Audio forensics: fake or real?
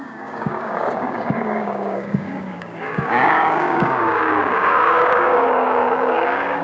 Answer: fake